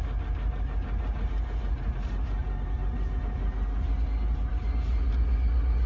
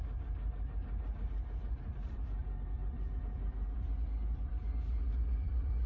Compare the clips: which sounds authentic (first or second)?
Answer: first